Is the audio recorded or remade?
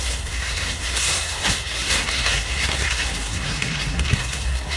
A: remade